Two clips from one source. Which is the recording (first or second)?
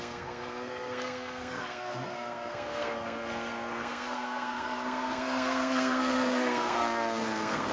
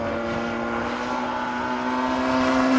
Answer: second